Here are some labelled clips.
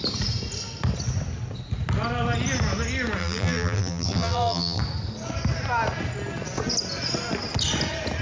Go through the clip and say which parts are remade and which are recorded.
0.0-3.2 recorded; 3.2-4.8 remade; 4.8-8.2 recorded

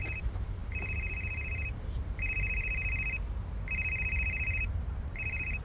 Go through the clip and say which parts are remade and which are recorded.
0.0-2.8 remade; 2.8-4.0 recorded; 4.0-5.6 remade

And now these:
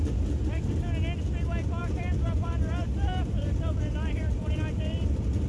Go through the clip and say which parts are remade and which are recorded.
0.0-1.8 recorded; 1.8-5.1 remade; 5.1-5.5 recorded